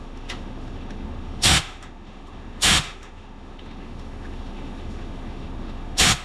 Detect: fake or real fake